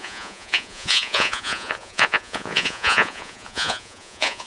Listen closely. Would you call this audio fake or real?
fake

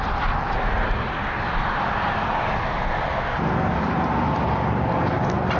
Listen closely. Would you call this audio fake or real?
real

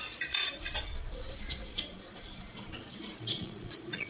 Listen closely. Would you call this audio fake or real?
fake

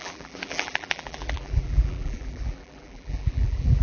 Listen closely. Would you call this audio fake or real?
fake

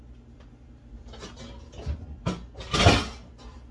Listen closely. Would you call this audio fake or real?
real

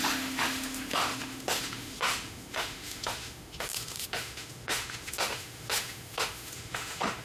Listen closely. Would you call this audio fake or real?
fake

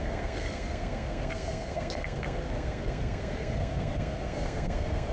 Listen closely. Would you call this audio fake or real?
fake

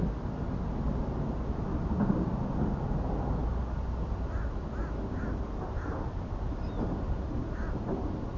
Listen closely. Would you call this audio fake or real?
real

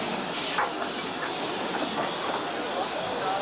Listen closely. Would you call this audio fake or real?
real